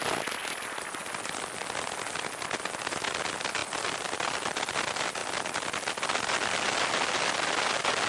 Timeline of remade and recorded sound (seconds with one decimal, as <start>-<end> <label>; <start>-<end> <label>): 0.0-8.1 recorded